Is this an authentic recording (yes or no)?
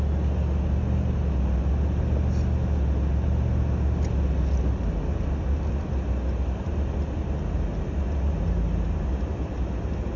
yes